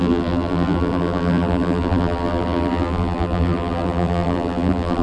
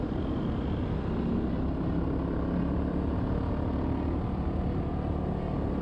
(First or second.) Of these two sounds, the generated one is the first